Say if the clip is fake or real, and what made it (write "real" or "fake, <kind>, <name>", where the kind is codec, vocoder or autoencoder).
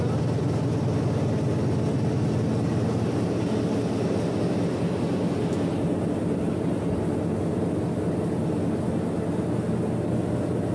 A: real